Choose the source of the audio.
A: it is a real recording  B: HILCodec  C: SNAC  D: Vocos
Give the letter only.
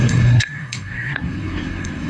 C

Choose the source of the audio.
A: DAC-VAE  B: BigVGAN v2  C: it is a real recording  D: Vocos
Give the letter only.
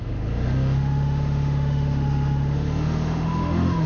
A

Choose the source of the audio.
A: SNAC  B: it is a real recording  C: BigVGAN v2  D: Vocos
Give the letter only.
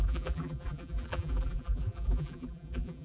C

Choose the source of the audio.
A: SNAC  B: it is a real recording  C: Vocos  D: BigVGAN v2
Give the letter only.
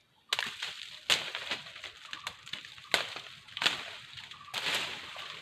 B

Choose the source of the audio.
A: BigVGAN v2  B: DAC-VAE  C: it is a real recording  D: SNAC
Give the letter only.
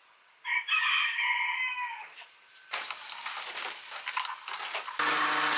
C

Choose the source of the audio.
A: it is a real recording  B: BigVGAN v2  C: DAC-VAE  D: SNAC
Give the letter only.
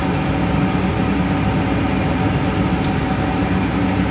A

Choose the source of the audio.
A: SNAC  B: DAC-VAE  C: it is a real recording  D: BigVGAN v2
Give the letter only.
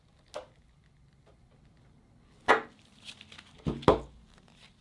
C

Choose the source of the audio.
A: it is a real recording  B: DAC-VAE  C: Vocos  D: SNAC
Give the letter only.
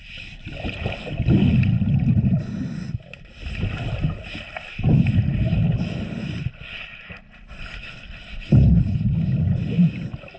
A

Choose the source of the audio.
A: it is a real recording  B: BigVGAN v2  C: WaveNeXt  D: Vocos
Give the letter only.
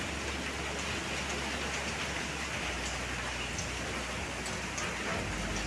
A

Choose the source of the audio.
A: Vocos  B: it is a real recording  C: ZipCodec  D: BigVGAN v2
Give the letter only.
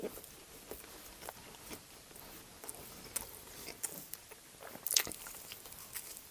B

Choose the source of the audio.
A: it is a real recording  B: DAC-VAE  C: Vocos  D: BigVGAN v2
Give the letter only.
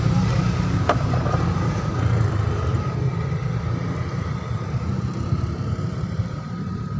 D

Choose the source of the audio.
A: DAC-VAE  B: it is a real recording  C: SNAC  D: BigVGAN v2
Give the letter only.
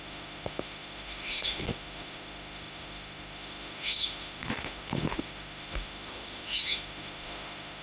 A